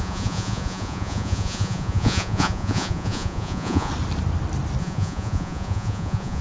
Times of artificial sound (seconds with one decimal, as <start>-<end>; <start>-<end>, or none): 0.0-3.9; 4.8-6.4